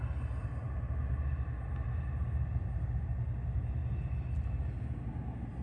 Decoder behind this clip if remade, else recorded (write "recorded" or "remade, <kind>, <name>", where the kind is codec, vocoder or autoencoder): recorded